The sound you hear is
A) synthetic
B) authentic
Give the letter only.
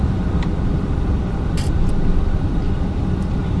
A